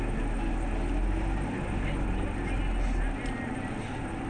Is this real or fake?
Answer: real